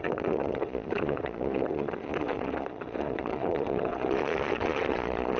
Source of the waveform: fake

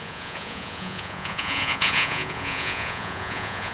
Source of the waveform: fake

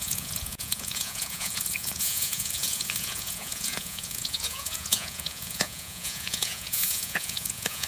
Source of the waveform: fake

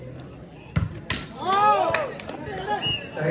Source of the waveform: real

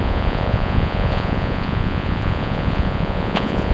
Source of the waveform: fake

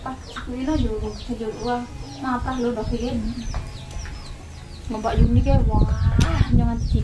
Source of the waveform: real